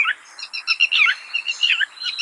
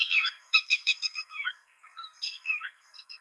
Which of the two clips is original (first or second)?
first